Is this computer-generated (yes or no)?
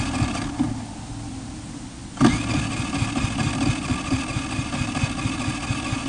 no